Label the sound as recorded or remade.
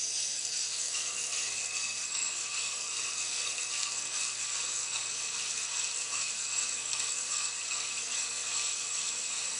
remade